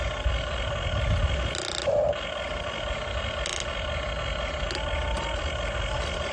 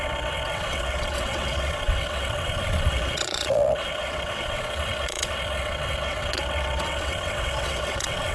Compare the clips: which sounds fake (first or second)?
second